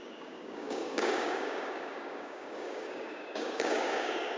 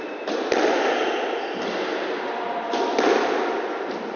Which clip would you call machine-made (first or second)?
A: first